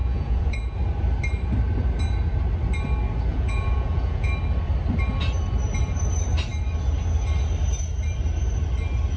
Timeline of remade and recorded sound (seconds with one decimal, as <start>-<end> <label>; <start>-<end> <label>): 0.0-0.7 remade; 0.7-3.3 recorded; 3.3-4.3 remade; 4.3-9.2 recorded